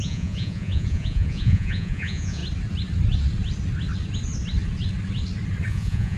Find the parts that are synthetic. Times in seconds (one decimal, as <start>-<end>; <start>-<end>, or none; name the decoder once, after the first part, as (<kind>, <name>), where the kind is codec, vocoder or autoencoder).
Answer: 0.0-2.4 (vocoder, Vocos); 5.7-6.2